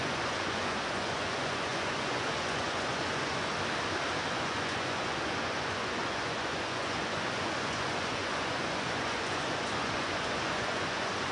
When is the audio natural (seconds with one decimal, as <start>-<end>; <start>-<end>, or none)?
3.5-4.3